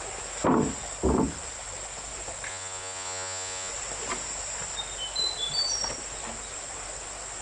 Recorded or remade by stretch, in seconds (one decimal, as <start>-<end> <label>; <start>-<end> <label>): 0.0-2.5 recorded; 2.5-3.7 remade; 3.7-7.4 recorded